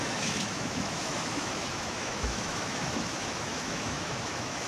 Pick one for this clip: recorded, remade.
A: remade